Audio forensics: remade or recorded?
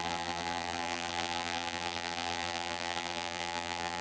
remade